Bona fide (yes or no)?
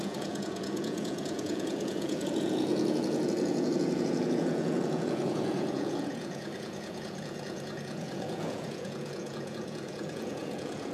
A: no